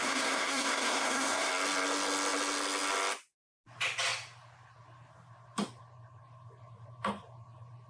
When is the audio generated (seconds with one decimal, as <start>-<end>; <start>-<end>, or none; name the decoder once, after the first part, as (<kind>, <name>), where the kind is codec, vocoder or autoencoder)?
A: 0.0-1.5 (codec, SNAC)